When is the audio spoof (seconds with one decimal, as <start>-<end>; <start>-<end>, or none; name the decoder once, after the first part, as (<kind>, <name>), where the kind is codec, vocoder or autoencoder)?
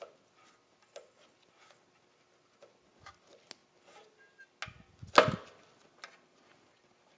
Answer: none